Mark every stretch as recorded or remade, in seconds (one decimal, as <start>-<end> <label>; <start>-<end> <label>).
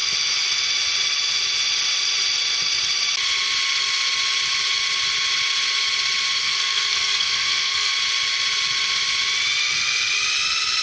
0.0-6.4 recorded; 6.4-7.9 remade; 7.9-10.8 recorded